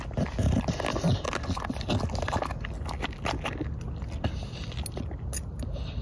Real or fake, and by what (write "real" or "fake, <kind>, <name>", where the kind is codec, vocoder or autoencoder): real